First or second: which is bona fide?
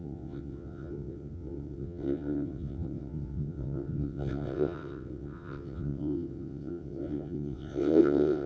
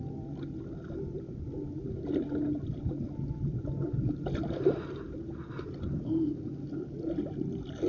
second